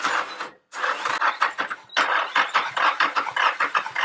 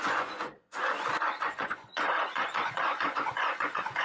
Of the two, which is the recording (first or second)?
first